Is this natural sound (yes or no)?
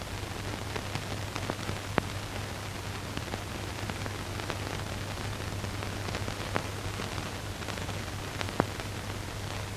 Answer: yes